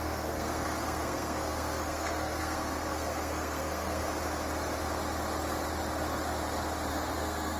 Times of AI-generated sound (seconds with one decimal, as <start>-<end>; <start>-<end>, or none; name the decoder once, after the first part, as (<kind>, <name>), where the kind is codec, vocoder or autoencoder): 0.0-4.0 (codec, SNAC); 6.9-7.6